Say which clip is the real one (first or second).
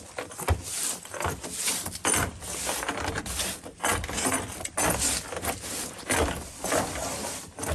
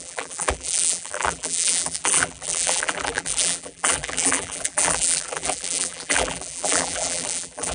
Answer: first